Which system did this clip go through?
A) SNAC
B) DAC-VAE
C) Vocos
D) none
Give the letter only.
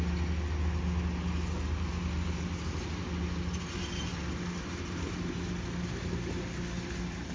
D